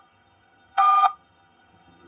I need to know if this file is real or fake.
fake